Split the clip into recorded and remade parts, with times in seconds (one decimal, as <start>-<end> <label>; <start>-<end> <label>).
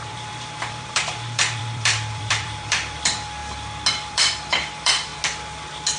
0.0-3.4 remade; 3.4-4.1 recorded; 4.1-5.1 remade; 5.1-6.0 recorded